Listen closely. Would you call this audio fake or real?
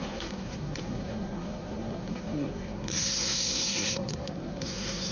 fake